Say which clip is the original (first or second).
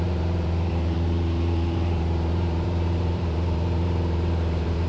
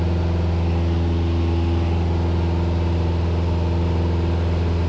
second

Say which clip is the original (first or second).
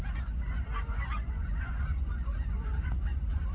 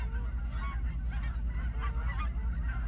second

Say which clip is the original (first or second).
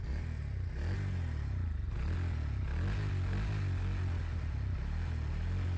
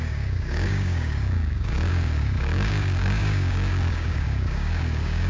first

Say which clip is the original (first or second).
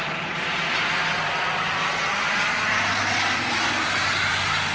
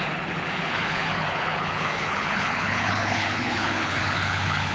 first